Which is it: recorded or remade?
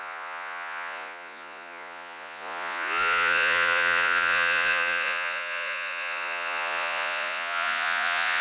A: remade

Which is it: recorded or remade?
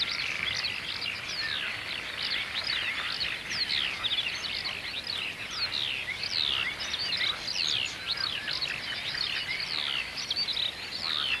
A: recorded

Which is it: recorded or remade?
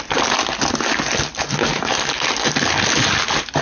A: recorded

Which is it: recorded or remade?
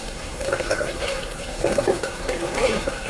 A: remade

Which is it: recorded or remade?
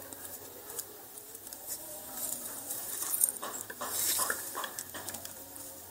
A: remade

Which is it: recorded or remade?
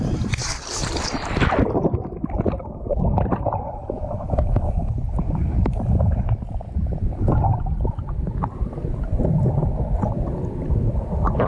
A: recorded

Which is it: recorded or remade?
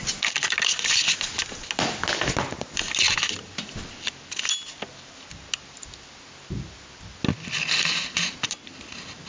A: recorded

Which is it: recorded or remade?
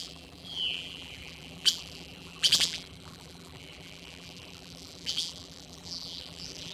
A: remade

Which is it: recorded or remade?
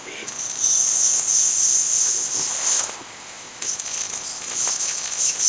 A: remade